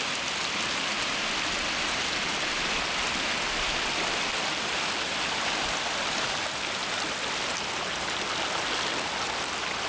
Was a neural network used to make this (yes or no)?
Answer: no